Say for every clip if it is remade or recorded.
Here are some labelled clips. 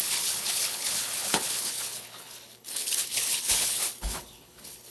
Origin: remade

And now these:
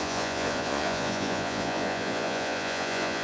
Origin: remade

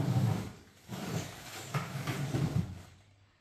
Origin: remade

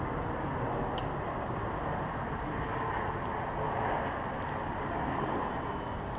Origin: recorded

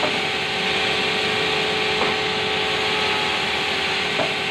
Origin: recorded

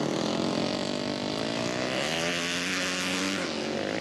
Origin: recorded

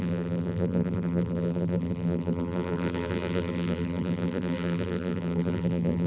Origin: remade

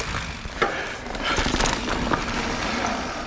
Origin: recorded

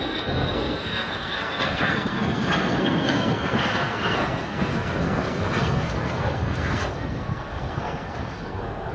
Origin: remade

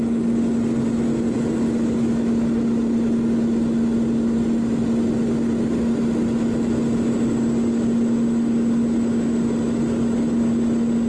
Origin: recorded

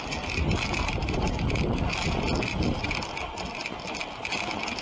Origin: recorded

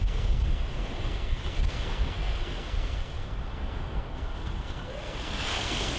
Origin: remade